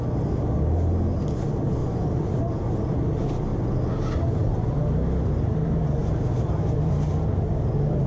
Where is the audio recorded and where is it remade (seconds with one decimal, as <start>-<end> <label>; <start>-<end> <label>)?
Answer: 0.0-1.8 recorded; 1.8-2.8 remade; 2.8-8.1 recorded